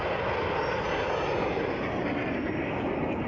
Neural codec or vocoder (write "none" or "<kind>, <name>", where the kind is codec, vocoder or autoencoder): none